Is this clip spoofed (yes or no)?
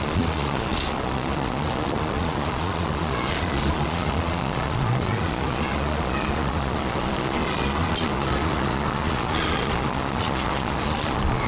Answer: yes